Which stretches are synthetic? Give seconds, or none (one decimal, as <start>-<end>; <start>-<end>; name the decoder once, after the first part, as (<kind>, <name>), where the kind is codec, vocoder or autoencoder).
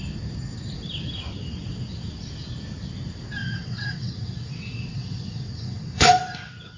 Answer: 3.4-6.8 (vocoder, WaveNeXt)